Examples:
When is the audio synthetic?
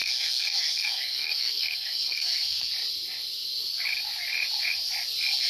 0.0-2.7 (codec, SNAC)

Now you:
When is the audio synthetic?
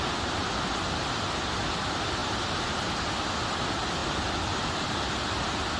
none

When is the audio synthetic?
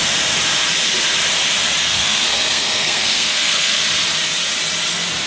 1.8-3.8 (codec, SNAC)